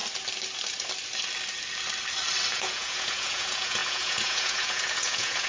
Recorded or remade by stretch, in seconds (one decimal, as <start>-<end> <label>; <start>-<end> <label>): 0.0-2.5 recorded; 2.5-5.5 remade